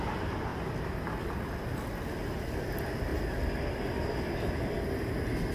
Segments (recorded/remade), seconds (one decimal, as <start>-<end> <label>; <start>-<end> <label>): 0.0-5.5 recorded